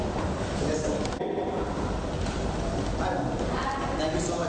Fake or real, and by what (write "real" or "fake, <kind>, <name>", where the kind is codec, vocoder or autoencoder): real